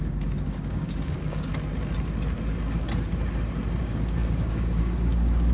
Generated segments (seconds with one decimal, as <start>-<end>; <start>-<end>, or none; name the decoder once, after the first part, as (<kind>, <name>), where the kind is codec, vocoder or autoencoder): 0.0-1.5 (codec, DAC); 3.8-5.5